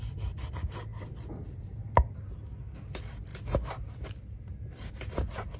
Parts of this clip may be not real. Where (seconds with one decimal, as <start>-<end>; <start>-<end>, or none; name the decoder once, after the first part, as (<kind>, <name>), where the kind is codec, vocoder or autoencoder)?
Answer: none